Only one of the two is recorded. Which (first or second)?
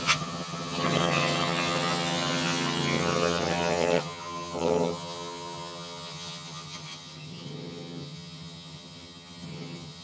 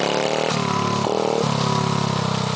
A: second